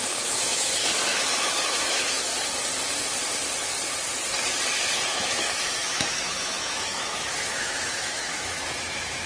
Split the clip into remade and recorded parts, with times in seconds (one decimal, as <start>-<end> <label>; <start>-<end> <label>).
0.0-2.3 remade; 2.3-5.1 recorded; 5.1-9.3 remade